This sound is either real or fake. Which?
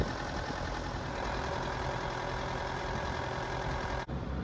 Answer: fake